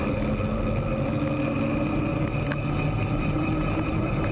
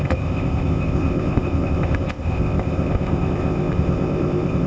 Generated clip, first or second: second